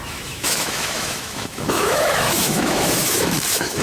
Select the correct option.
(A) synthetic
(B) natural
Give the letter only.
A